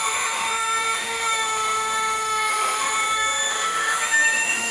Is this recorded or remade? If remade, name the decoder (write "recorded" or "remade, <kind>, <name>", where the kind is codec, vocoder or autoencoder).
remade, autoencoder, DAC-VAE